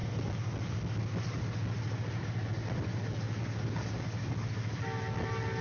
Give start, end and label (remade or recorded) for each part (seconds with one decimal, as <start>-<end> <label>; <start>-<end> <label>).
0.0-5.6 recorded